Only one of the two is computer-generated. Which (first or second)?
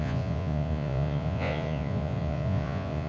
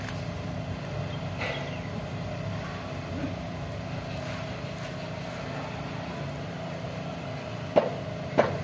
first